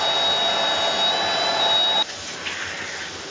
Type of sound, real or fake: real